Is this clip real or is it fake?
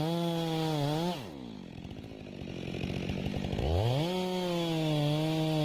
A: real